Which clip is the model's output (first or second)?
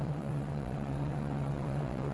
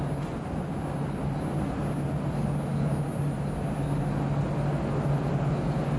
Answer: first